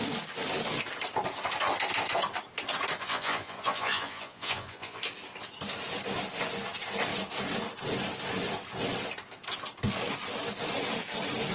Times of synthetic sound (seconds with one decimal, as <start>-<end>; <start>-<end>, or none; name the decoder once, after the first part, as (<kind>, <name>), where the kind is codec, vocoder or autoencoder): 3.0-5.0 (vocoder, Vocos)